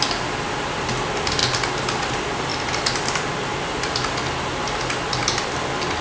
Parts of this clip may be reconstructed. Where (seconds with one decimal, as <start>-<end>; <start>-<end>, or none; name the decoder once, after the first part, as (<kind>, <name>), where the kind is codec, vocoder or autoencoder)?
none